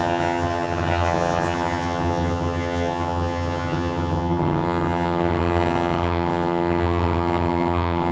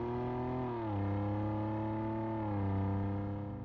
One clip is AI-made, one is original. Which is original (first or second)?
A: second